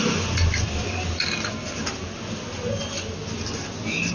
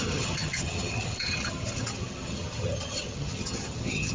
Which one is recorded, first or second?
first